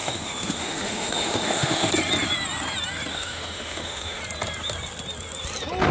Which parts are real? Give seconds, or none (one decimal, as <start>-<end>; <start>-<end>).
1.9-3.1; 4.2-5.9